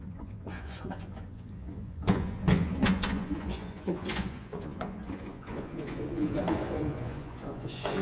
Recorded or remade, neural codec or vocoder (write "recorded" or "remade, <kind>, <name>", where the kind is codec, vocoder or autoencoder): remade, vocoder, Vocos